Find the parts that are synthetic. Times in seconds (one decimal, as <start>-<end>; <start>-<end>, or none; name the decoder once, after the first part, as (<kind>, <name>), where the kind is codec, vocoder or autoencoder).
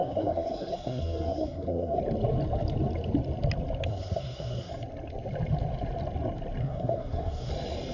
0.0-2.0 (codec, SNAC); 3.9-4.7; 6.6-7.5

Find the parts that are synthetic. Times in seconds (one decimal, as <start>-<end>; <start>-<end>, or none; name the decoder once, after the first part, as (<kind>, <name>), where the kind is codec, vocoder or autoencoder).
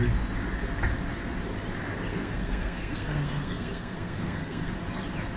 2.1-4.7 (codec, SNAC)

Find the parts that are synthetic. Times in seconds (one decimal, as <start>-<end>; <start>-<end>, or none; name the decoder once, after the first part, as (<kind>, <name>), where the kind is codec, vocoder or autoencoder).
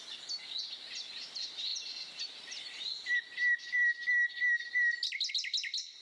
none